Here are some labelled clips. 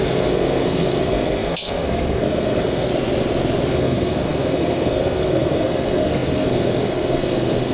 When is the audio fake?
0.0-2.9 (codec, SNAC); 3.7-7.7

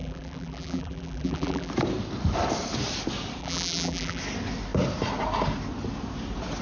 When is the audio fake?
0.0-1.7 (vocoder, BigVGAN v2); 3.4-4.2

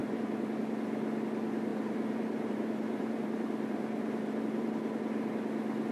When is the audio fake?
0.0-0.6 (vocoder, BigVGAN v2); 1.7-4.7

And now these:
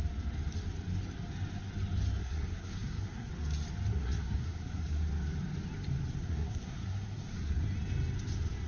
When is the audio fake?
2.2-3.3 (codec, SNAC); 3.9-5.0; 6.2-7.6